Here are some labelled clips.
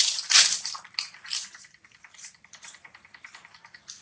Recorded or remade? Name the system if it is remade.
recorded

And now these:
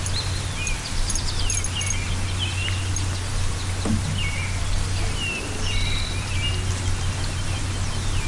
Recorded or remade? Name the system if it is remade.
recorded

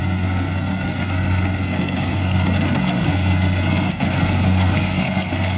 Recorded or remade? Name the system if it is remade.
remade, codec, SNAC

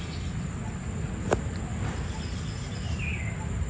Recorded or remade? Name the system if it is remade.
recorded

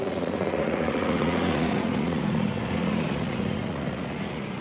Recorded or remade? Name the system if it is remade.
remade, vocoder, Vocos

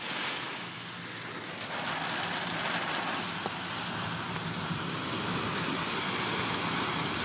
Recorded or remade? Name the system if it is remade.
recorded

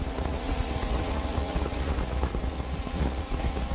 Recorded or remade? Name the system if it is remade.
remade, vocoder, Vocos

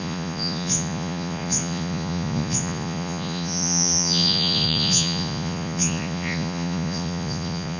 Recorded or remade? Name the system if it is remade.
remade, vocoder, Vocos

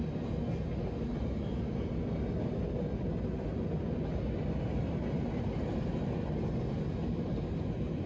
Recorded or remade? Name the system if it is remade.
recorded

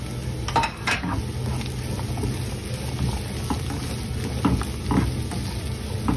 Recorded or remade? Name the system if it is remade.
recorded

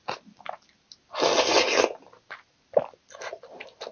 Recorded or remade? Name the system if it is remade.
recorded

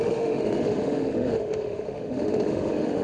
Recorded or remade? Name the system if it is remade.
remade, autoencoder, DAC-VAE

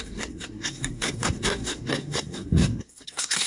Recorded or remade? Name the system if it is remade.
remade, codec, SNAC